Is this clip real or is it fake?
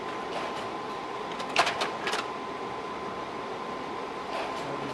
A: real